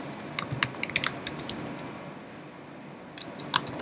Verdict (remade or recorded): recorded